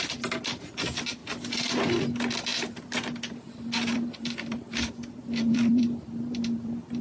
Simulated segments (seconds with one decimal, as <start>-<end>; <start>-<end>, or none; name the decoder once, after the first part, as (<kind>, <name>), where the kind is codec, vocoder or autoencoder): 1.2-1.8 (vocoder, BigVGAN v2); 2.5-7.0